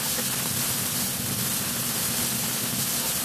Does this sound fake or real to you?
real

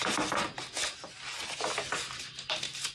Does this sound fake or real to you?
real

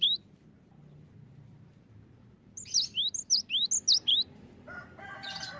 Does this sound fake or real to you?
real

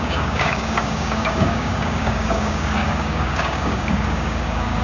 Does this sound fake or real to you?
fake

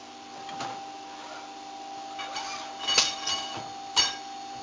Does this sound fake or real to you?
real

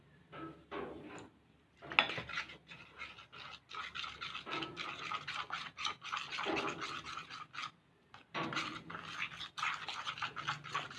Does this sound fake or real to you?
real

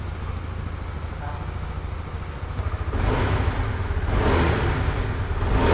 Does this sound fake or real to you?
real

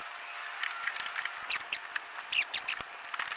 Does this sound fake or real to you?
real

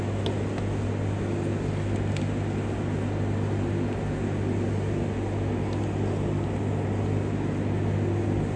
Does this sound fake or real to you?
real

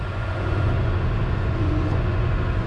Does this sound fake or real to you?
fake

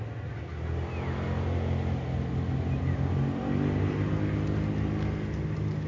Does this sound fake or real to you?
real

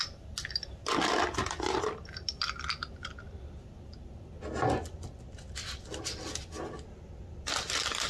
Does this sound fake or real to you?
real